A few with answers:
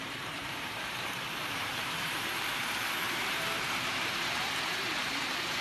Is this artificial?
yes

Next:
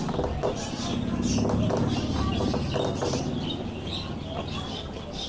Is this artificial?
no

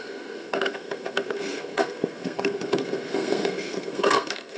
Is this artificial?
yes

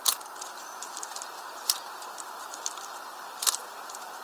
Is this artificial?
yes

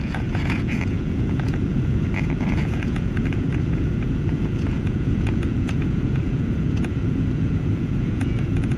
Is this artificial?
yes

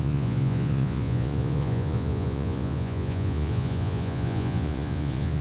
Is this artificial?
yes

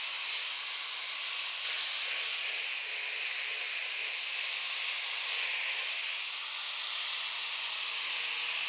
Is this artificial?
no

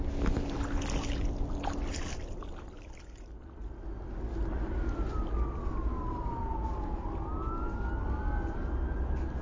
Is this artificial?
no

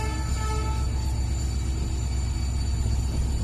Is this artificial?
no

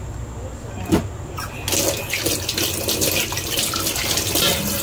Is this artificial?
no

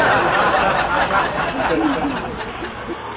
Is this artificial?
no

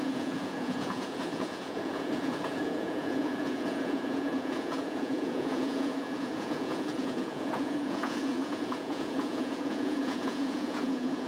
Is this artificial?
yes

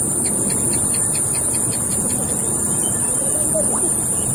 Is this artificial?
no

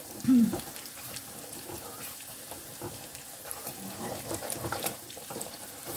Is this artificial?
yes